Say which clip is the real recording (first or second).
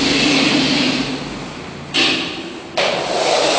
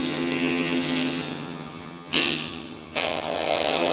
first